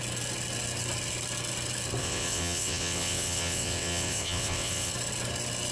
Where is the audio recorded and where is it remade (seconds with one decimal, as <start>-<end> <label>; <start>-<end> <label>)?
0.0-2.0 recorded; 2.0-4.9 remade; 4.9-5.7 recorded